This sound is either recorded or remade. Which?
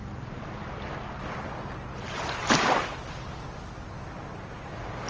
recorded